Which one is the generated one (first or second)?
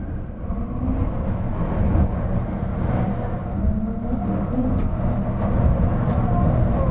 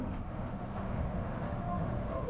second